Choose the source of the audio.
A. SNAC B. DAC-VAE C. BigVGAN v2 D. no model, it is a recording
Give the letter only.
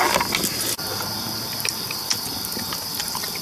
D